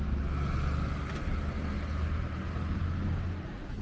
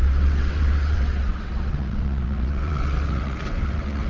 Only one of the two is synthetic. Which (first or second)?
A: second